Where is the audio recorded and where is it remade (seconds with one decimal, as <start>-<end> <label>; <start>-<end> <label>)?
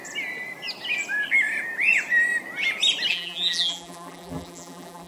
0.0-3.1 recorded; 3.1-5.1 remade